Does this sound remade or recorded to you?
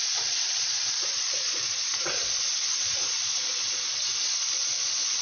remade